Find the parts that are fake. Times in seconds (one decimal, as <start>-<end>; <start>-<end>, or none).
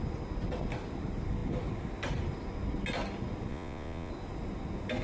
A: 3.5-4.1